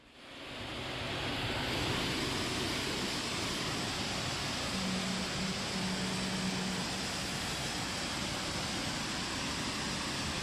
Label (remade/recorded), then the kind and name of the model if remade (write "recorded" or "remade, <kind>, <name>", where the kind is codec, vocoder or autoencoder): recorded